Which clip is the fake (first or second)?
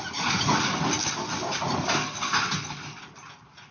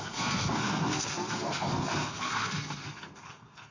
second